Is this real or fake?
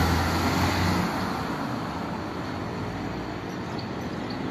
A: real